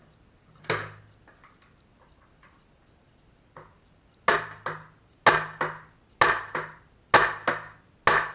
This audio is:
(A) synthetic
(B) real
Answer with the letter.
B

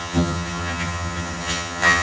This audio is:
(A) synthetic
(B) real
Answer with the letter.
A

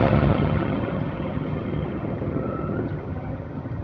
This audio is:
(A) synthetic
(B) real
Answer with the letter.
A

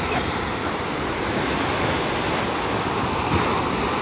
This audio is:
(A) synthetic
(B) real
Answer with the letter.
B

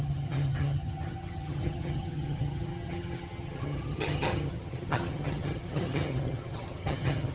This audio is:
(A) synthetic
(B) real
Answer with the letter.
A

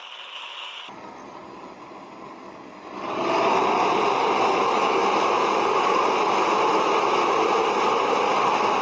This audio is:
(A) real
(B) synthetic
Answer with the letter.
A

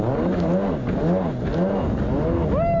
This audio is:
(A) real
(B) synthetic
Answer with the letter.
A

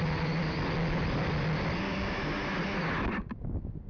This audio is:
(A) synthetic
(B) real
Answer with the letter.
B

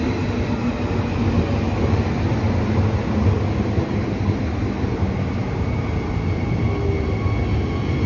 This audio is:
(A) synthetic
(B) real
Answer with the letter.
B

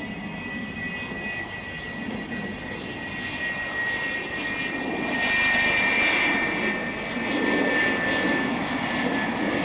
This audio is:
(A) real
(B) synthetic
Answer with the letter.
A